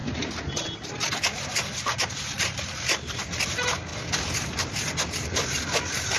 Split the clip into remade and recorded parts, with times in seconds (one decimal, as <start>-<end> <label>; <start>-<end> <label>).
0.0-2.1 recorded; 2.1-6.2 remade